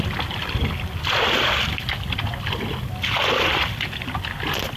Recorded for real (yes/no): yes